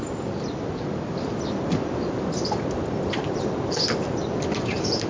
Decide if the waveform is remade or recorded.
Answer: recorded